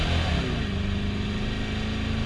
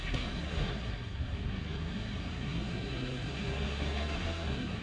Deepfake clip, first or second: second